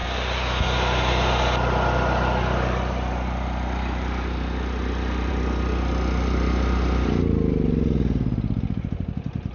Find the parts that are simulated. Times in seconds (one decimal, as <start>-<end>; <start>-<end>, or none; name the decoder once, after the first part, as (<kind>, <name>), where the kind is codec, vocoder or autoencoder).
none